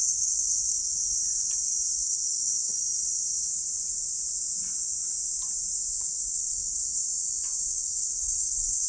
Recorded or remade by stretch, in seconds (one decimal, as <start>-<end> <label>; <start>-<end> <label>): 0.0-1.0 remade; 1.0-1.9 recorded; 1.9-2.7 remade; 2.7-6.0 recorded; 6.0-7.0 remade; 7.0-7.7 recorded; 7.7-8.9 remade